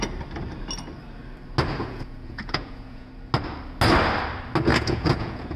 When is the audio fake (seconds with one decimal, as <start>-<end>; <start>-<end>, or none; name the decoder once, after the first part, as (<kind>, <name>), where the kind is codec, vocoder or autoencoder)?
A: 1.8-3.1 (vocoder, Vocos); 4.7-5.6